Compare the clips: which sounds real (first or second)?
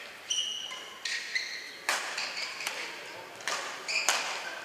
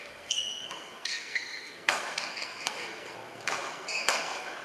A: first